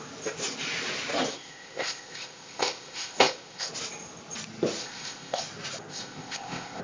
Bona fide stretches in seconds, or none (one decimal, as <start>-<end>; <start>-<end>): 0.0-1.3; 3.7-4.8; 5.4-5.9